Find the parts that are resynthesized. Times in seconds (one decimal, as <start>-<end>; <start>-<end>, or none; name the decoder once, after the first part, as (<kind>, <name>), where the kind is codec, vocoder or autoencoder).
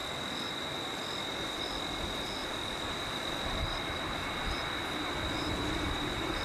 2.4-6.4 (vocoder, BigVGAN v2)